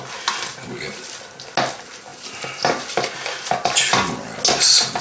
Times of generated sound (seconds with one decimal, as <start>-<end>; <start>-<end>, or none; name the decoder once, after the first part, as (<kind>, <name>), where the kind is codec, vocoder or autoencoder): none